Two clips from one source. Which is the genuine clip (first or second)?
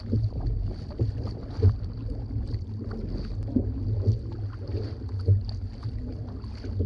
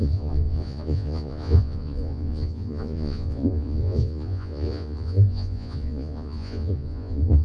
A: first